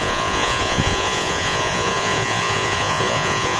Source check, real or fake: fake